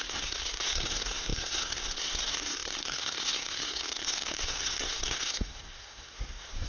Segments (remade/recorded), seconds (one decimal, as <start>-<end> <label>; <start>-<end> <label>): 0.0-6.7 remade